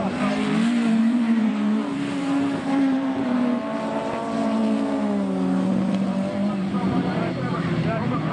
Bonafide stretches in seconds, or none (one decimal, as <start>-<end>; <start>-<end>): 4.6-5.7